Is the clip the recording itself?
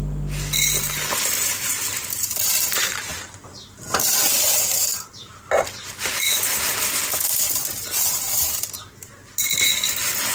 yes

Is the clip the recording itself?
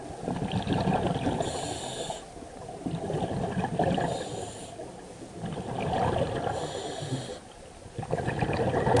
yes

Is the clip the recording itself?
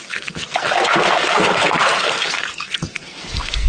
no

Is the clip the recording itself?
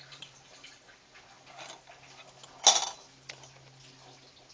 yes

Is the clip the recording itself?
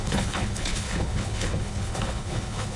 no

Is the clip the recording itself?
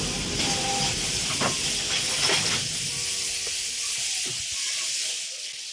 yes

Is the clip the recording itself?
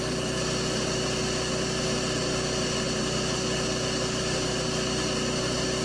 yes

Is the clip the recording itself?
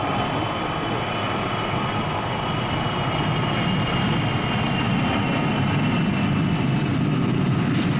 yes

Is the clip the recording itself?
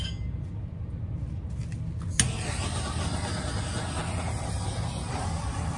yes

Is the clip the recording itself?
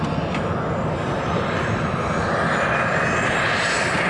yes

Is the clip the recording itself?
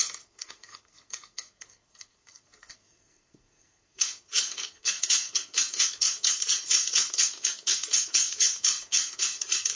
no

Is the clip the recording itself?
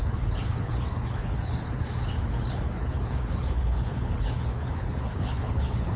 no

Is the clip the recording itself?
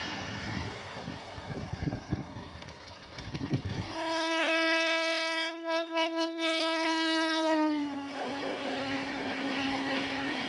no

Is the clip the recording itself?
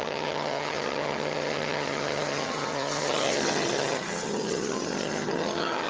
no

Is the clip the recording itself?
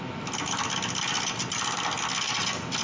yes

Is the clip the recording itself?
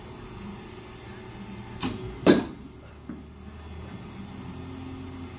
yes